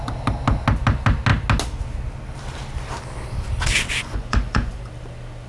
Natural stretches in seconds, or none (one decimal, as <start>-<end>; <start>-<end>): 0.0-4.0; 4.7-5.5